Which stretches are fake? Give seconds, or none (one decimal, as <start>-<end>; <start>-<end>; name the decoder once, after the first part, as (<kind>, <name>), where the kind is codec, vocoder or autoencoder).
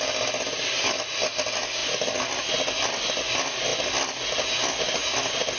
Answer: none